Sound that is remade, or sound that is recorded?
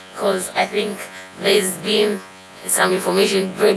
remade